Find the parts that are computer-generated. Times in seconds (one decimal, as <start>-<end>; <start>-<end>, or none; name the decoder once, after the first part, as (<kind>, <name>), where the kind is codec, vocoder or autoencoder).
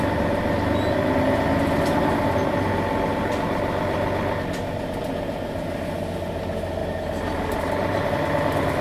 none